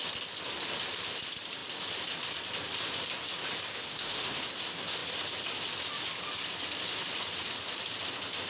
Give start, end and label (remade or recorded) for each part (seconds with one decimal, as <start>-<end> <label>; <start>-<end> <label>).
0.0-3.7 recorded; 3.7-4.5 remade; 4.5-8.5 recorded